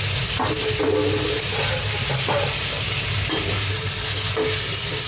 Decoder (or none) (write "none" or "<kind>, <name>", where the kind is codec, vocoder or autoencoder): none